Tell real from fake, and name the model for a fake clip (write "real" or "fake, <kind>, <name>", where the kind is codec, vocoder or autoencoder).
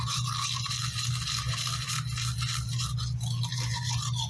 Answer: real